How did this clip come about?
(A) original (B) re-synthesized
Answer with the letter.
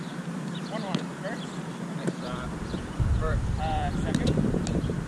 B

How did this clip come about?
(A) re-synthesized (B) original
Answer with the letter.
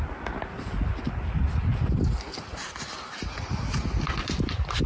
B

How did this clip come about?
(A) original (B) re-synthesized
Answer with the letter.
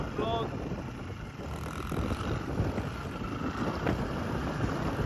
A